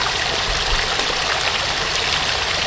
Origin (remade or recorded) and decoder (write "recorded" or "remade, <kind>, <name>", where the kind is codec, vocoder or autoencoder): recorded